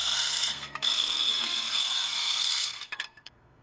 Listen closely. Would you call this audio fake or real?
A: fake